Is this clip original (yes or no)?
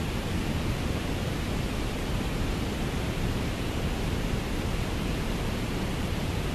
yes